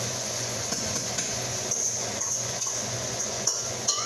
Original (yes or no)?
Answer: no